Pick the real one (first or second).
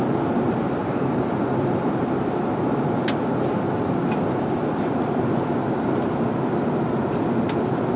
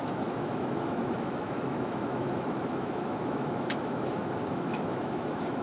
first